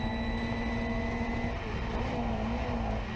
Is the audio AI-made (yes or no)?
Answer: no